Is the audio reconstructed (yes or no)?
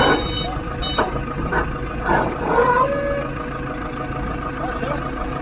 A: no